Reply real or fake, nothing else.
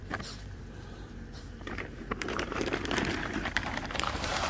fake